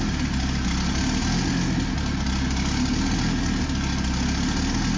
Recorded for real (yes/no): yes